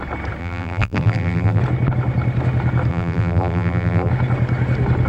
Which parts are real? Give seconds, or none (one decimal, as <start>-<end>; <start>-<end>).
0.0-0.4; 1.6-2.9; 4.1-5.1

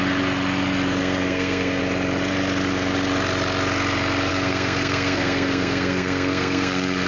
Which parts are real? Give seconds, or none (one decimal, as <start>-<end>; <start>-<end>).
0.0-1.0; 1.8-4.3